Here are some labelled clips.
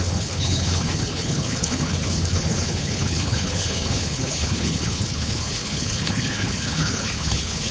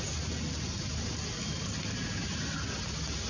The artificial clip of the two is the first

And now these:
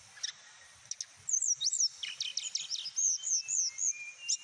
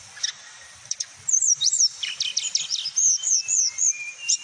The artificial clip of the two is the second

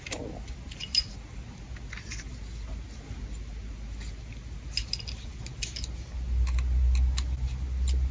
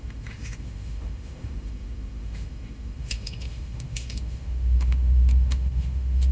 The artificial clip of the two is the second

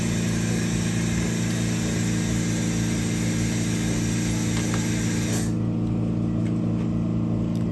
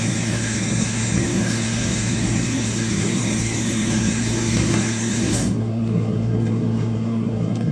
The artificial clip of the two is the second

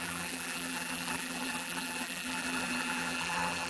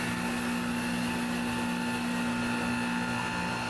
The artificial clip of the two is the first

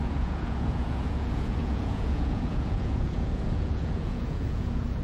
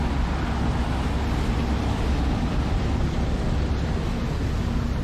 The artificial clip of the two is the first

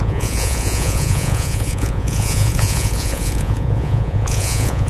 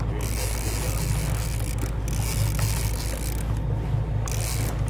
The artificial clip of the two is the first